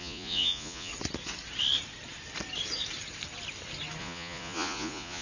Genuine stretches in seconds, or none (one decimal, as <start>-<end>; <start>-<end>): 0.9-4.0